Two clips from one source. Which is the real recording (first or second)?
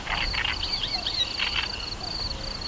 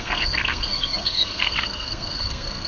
first